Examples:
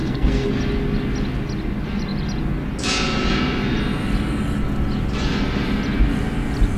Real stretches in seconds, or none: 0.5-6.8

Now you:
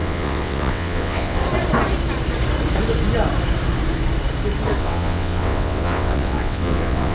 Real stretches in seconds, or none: 1.4-4.8

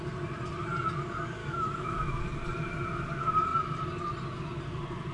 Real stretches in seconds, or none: 0.0-1.4; 2.2-5.1

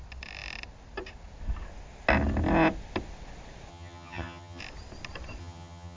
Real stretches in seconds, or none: 0.0-3.7; 4.6-5.4

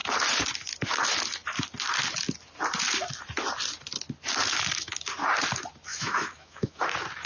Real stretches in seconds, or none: 0.0-5.9; 6.8-7.3

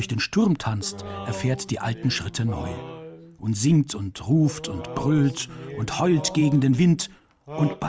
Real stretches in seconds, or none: 0.0-7.9